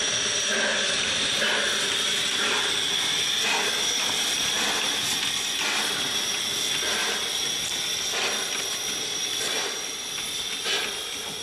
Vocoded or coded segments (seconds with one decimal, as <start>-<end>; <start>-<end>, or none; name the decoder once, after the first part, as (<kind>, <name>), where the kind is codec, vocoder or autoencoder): none

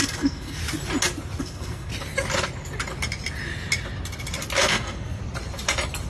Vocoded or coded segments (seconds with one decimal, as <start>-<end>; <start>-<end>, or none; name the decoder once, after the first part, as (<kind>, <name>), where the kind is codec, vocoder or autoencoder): 0.0-0.6 (codec, SNAC); 1.4-1.9; 4.6-5.2

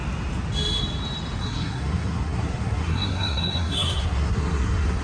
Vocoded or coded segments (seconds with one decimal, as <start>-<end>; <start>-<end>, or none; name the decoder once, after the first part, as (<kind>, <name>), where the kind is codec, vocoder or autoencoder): 1.4-5.0 (codec, SNAC)

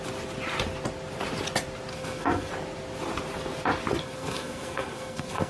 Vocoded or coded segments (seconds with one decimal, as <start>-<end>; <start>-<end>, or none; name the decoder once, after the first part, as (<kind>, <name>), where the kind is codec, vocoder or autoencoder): 1.9-2.5 (codec, SNAC); 4.0-5.5

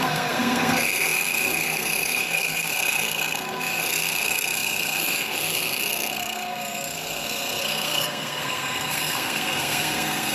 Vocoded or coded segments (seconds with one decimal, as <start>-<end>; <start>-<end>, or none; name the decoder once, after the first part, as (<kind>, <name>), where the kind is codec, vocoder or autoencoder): 0.0-10.3 (codec, SNAC)

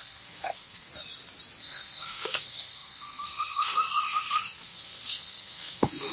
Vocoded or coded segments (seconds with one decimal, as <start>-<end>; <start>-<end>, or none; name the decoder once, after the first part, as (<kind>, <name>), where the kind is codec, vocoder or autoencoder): 0.0-0.9 (codec, SNAC); 1.6-6.1

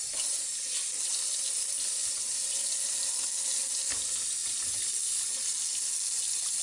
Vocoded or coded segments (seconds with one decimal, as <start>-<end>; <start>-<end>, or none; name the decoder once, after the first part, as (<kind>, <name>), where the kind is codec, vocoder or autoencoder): none

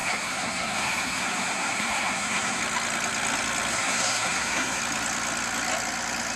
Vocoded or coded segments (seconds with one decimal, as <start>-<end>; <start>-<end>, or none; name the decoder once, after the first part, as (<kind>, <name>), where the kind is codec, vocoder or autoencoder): 0.0-2.6 (codec, SNAC); 3.7-4.8